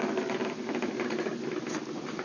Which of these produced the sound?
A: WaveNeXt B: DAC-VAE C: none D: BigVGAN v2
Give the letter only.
C